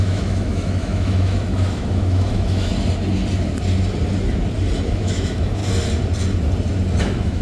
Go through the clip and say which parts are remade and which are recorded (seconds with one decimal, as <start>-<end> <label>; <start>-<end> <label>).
0.0-2.7 remade; 2.7-4.9 recorded; 4.9-5.6 remade; 5.6-7.0 recorded; 7.0-7.4 remade